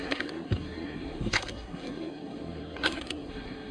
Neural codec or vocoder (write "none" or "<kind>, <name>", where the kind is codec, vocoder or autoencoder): codec, SNAC